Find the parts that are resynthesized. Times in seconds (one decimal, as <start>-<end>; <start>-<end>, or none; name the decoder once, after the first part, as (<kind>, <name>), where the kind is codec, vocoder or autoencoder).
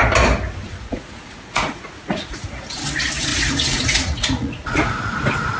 0.7-2.5 (vocoder, Vocos); 3.3-5.0